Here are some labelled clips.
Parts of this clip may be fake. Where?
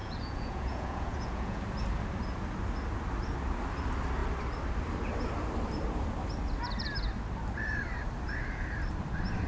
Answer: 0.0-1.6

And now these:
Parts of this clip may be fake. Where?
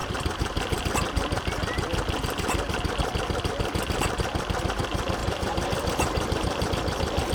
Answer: 0.0-0.8; 5.2-6.7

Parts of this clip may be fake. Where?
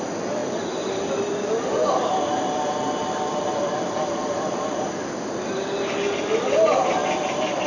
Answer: 0.4-1.3; 3.0-5.3; 7.0-7.7